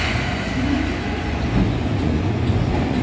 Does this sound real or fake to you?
fake